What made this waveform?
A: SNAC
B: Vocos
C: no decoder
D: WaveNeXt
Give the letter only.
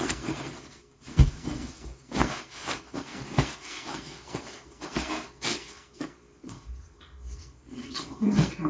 A